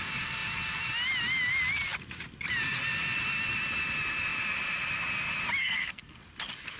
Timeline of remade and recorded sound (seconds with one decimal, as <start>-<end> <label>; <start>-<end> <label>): 0.0-5.6 recorded; 5.6-6.2 remade; 6.2-6.8 recorded